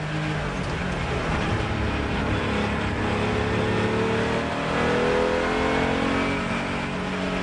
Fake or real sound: real